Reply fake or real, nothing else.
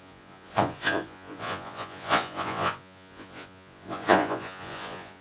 fake